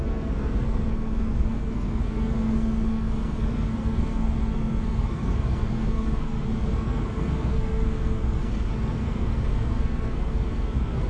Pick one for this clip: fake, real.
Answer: fake